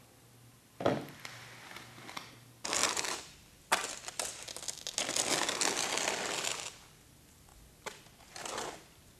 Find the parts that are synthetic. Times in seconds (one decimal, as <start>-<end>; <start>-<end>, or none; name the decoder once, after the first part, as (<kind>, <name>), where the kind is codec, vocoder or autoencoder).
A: none